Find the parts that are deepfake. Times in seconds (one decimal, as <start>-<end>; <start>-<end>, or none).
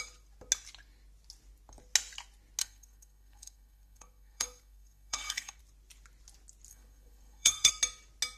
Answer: 2.6-5.6; 6.7-7.7